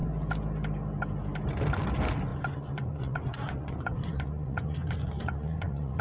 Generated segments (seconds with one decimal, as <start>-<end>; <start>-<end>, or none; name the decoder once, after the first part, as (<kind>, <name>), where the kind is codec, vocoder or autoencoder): 2.3-6.0 (vocoder, Vocos)

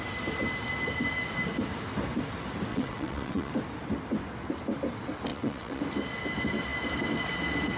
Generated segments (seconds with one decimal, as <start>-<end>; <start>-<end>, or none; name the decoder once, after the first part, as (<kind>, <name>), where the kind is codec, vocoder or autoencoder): 2.7-3.5 (vocoder, WaveNeXt); 5.3-5.8